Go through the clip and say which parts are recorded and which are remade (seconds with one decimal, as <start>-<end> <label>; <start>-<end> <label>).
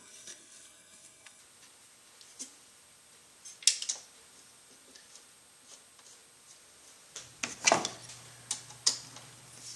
0.0-1.4 remade; 1.4-9.8 recorded